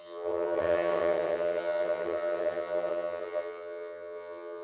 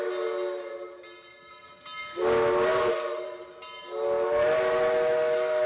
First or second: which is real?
second